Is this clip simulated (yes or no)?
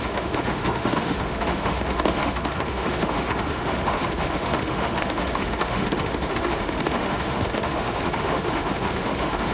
yes